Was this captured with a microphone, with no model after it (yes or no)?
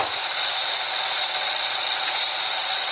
no